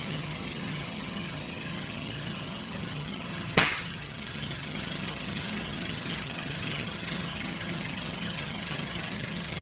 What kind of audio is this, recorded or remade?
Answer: remade